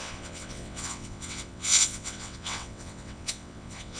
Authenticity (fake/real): fake